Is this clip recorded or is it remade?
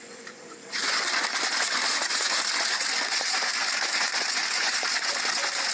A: remade